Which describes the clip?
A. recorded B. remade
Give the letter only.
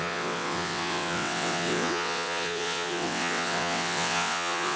B